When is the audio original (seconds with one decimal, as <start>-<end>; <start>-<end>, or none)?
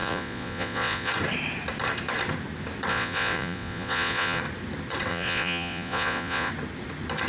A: 1.1-2.9; 4.4-5.1; 6.5-7.3